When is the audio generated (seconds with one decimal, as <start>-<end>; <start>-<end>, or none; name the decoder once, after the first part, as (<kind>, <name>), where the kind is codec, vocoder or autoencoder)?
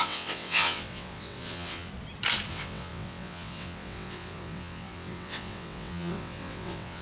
0.0-1.9 (vocoder, WaveNeXt); 2.5-7.0